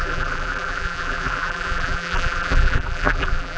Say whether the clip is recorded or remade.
remade